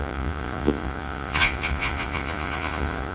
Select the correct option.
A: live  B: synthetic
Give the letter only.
B